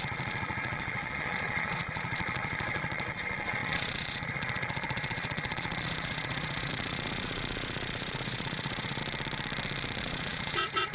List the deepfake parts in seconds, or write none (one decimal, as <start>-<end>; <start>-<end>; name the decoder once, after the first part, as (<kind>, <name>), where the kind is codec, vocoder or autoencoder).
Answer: 0.0-9.0 (vocoder, Vocos); 10.0-10.9

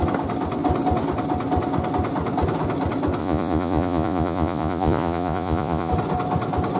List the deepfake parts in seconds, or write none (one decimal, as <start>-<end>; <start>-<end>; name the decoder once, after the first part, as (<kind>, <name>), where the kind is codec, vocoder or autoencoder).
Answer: 3.2-5.9 (vocoder, Vocos)